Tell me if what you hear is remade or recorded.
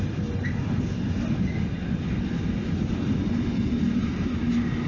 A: recorded